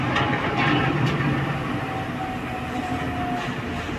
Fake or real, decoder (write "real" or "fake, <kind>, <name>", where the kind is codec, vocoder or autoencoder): real